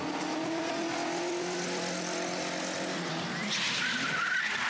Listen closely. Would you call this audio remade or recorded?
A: recorded